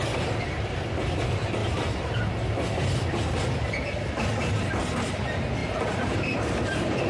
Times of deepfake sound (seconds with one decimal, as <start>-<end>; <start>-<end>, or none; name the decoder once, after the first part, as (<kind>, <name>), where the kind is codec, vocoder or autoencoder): 5.6-7.1 (vocoder, BigVGAN v2)